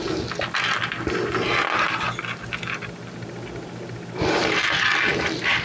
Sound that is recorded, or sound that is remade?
recorded